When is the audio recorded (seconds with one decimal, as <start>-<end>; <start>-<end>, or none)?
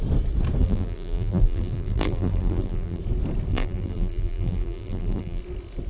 0.0-0.6; 3.0-3.5; 5.4-5.9